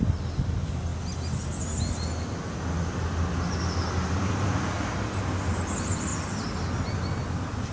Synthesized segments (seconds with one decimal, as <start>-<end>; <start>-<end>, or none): none